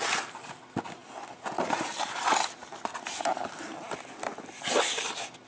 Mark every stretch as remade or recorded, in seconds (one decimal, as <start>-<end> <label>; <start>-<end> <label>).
0.0-5.5 recorded

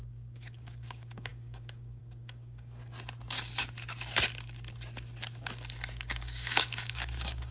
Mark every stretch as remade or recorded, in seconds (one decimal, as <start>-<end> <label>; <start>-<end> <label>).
0.0-2.8 remade; 2.8-5.9 recorded; 5.9-7.5 remade

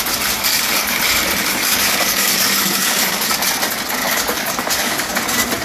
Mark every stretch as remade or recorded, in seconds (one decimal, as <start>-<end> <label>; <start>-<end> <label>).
0.0-0.5 recorded; 0.5-1.0 remade; 1.0-1.4 recorded; 1.4-3.3 remade; 3.3-4.0 recorded; 4.0-5.1 remade; 5.1-5.6 recorded

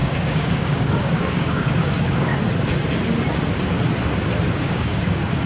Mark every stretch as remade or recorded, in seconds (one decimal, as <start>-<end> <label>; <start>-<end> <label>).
0.0-2.3 remade; 2.3-4.5 recorded; 4.5-5.5 remade